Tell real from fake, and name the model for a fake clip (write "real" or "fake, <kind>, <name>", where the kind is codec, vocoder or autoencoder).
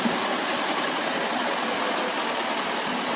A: real